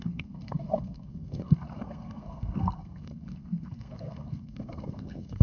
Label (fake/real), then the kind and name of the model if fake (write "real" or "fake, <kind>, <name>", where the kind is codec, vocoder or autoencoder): fake, codec, SNAC